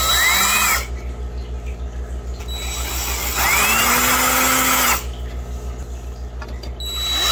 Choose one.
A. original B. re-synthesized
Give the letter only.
A